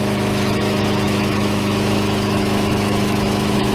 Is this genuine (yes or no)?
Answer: no